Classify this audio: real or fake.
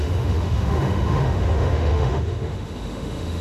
fake